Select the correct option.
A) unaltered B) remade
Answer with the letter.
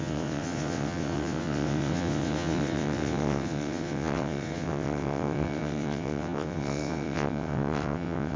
B